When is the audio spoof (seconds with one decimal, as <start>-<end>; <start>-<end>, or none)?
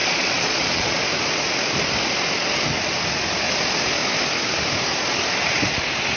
0.0-1.0